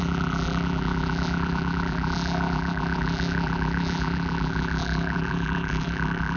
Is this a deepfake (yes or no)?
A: yes